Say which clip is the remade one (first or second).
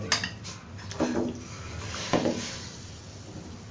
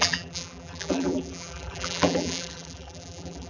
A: second